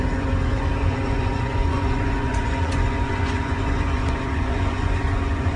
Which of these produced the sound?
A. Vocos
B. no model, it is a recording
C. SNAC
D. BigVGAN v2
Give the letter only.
A